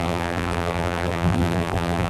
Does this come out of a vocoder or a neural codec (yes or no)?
yes